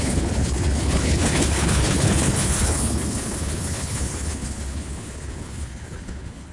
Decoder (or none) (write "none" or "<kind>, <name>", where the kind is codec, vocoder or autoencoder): codec, HILCodec